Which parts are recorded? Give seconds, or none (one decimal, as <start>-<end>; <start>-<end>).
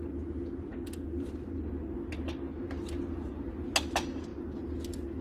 0.0-5.2